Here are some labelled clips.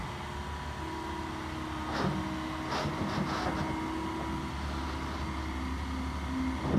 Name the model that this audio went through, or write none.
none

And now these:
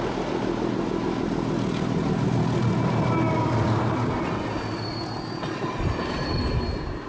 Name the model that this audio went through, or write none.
none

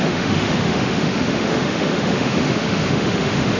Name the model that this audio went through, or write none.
autoencoder, DAC-VAE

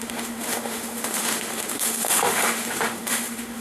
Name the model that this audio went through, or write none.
autoencoder, DAC-VAE